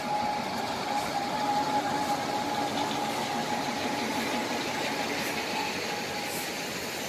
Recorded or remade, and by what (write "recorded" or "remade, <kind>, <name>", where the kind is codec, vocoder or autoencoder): recorded